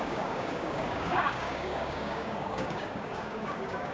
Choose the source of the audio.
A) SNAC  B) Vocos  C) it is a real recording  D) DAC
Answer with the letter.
D